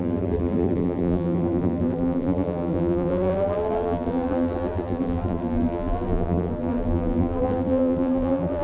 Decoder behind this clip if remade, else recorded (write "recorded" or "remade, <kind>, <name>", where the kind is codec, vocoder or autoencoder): remade, vocoder, BigVGAN v2